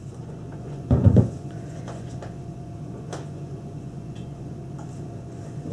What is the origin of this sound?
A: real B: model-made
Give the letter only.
B